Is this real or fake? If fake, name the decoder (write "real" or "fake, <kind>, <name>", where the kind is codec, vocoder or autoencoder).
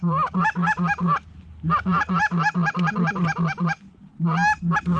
real